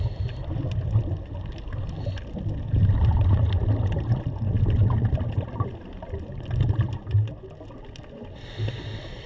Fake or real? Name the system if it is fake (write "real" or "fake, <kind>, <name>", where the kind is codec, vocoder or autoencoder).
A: real